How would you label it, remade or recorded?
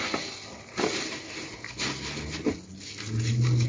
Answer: recorded